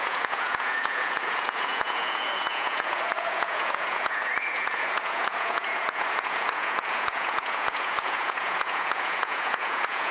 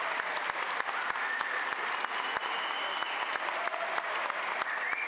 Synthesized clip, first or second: first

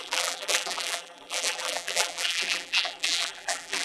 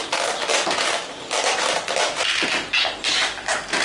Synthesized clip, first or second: first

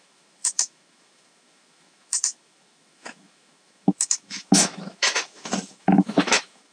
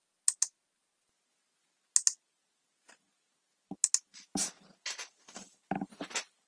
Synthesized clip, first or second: first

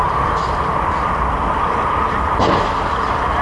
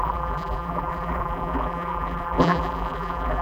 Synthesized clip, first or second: second